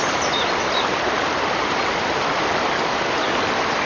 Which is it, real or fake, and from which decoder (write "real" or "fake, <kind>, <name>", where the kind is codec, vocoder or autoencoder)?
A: real